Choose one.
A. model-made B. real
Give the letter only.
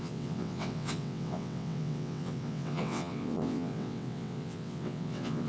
A